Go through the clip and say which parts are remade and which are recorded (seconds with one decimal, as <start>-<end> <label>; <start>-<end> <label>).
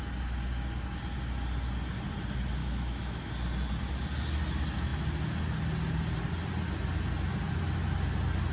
0.0-2.6 recorded; 2.6-3.3 remade; 3.3-8.5 recorded